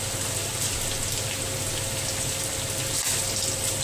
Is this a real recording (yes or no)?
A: yes